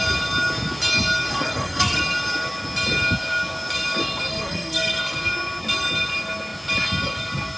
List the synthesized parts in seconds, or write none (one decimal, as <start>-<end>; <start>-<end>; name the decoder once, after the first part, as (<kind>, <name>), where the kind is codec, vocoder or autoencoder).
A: 1.3-2.0 (codec, SNAC); 4.3-5.0

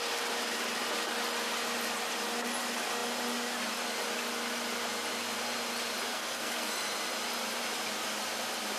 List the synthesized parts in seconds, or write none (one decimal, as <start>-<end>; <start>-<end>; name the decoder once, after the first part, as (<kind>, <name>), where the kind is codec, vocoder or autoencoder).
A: 6.1-6.7 (codec, SNAC)